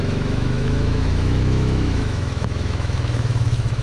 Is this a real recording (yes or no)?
no